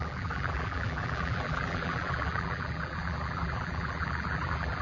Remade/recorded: remade